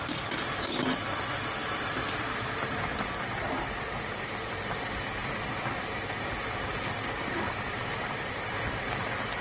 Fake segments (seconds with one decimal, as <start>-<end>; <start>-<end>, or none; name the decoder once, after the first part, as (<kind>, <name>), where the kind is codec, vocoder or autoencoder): none